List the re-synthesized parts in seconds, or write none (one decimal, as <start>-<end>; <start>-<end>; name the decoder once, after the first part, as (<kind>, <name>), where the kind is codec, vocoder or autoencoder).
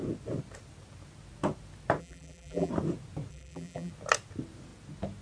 2.0-2.7 (vocoder, BigVGAN v2); 3.3-3.9